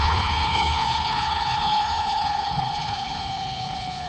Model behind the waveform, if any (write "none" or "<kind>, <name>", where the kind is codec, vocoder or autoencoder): codec, HILCodec